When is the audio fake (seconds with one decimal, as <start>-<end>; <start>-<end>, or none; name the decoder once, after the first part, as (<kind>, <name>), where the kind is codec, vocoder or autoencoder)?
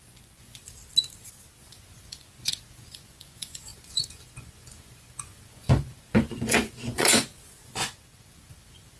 0.0-0.6 (vocoder, Vocos); 1.6-9.0